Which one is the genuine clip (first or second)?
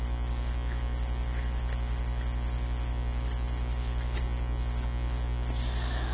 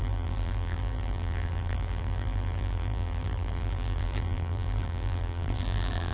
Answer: first